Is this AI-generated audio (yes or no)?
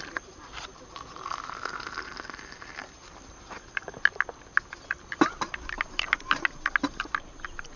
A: no